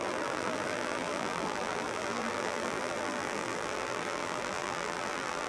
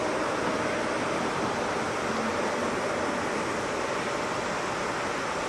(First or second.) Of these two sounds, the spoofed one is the first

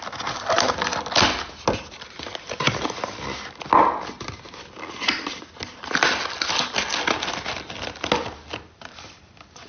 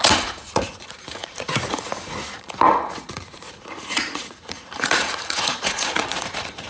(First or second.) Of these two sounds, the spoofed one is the second